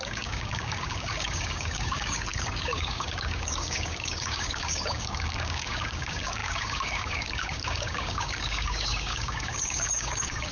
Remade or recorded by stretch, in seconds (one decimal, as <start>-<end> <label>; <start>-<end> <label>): 0.0-10.5 remade